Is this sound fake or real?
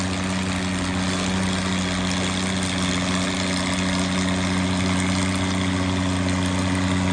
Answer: real